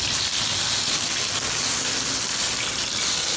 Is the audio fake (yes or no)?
no